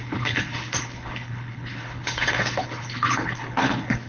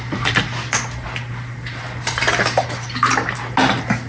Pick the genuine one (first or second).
second